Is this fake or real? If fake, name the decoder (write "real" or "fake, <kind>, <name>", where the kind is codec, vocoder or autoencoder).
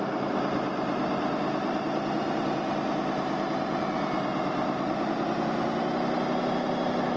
real